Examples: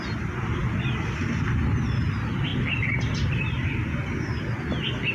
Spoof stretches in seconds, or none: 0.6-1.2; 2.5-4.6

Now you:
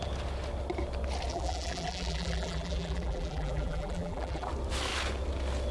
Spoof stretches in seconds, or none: 1.3-4.5

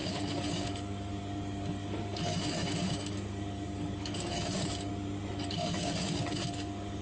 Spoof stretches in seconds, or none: 0.0-4.9; 5.5-7.0

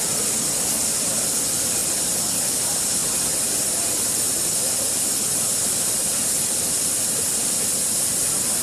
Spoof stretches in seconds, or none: 0.0-3.0; 3.8-8.6

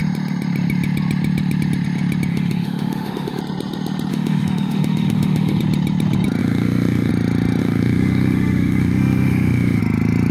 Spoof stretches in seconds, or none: 2.3-3.4; 4.1-5.6; 6.4-7.1; 7.6-9.8

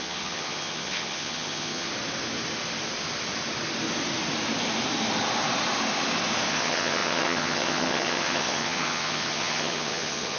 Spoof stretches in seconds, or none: 0.0-1.9; 6.5-10.4